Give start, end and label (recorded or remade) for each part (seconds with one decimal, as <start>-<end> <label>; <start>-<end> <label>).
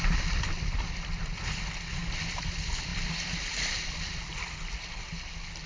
0.0-5.7 recorded